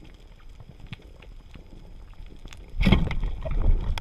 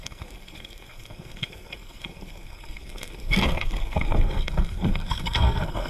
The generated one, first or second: second